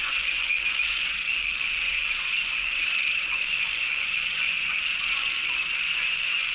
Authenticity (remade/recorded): remade